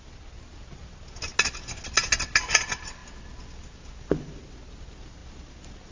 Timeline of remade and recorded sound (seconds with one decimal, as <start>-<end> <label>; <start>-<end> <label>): 0.0-5.9 recorded